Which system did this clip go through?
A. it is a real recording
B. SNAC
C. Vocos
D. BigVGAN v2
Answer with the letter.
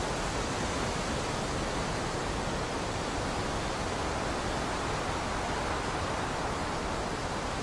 A